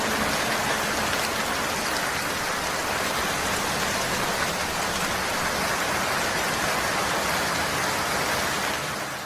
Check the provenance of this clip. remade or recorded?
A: recorded